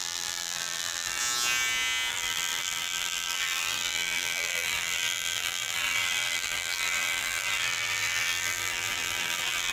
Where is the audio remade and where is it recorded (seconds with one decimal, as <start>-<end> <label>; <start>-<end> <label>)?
0.0-1.2 remade; 1.2-2.1 recorded; 2.1-9.7 remade